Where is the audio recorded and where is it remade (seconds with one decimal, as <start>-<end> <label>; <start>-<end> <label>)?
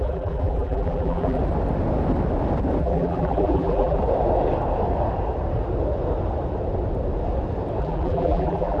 0.0-1.4 remade; 1.4-2.8 recorded; 2.8-4.0 remade; 4.0-7.8 recorded; 7.8-8.8 remade